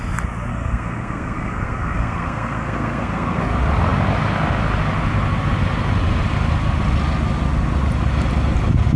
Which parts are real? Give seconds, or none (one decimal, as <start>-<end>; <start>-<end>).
0.0-0.5; 3.4-9.0